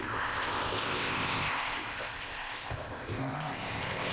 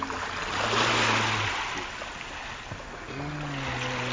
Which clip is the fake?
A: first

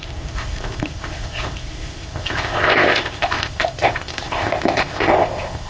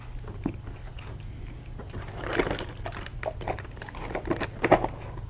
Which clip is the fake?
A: first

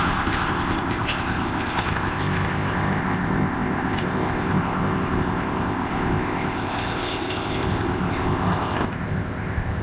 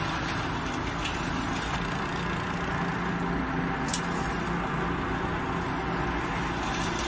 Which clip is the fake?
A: first